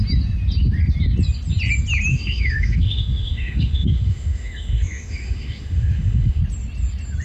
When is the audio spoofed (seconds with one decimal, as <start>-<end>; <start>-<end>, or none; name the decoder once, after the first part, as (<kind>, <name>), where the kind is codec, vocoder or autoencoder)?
2.1-6.4 (autoencoder, DAC-VAE)